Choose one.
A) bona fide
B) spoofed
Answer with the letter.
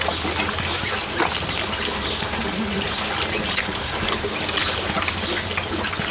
A